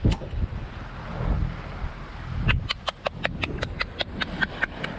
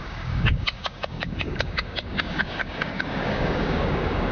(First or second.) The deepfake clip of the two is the second